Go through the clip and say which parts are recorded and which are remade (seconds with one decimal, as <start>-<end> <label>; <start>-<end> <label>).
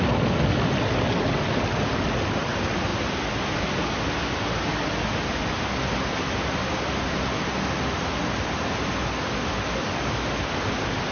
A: 0.0-11.1 recorded